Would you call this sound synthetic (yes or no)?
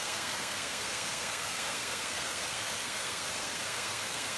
yes